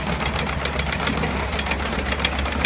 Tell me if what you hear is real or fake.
real